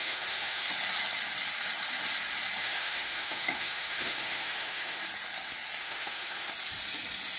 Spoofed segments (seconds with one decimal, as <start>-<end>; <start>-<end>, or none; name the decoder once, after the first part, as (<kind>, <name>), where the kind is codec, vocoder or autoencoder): 0.0-0.7 (autoencoder, DAC-VAE); 2.6-5.0; 5.8-6.5